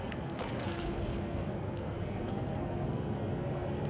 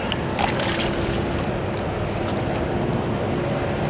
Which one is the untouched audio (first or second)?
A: second